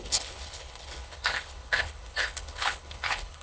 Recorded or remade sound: remade